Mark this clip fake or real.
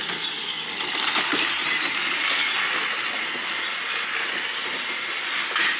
real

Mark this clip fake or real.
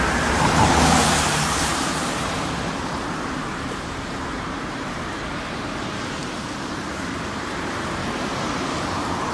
fake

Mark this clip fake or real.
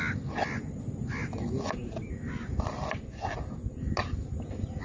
real